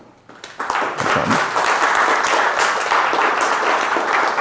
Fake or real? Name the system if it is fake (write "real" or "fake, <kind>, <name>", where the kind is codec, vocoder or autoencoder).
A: real